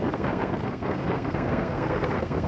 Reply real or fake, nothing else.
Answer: fake